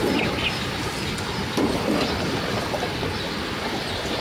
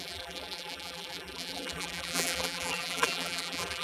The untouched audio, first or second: first